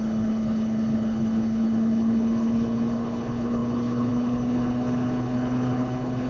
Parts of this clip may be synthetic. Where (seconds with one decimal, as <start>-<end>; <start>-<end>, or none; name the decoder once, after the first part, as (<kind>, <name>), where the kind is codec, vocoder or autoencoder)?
0.0-6.3 (codec, HILCodec)